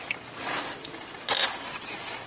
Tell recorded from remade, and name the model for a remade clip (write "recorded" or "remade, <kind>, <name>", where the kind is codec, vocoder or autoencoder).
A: recorded